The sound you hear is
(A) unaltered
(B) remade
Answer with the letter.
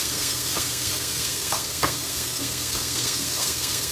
B